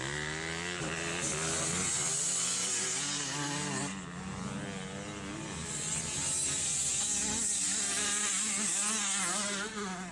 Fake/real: real